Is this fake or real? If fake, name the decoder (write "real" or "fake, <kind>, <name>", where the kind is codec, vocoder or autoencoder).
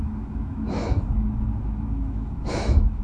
fake, autoencoder, DAC-VAE